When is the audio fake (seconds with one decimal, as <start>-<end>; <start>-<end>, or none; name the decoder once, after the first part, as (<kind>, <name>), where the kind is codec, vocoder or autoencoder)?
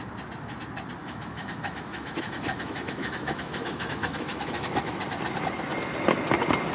1.0-5.0 (autoencoder, DAC-VAE)